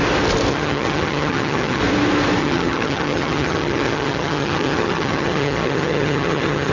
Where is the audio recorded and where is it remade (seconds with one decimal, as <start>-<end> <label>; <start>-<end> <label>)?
0.0-0.5 recorded; 0.5-1.8 remade; 1.8-2.4 recorded; 2.4-6.7 remade